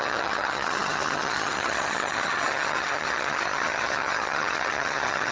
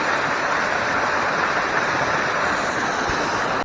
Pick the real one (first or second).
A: second